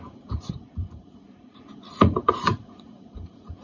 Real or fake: fake